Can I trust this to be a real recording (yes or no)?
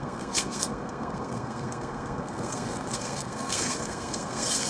no